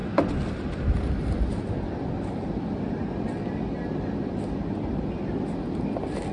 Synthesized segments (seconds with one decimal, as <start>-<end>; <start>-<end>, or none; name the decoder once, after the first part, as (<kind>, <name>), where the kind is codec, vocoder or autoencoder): none